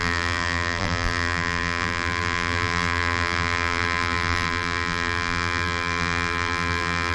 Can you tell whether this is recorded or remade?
remade